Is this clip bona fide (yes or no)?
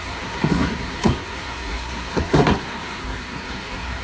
no